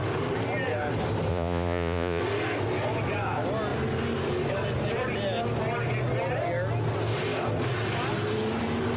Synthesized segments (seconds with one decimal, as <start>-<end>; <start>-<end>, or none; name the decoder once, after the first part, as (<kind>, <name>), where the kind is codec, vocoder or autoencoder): 1.3-2.2 (vocoder, Vocos)